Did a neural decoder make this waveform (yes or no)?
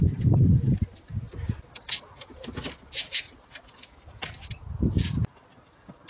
no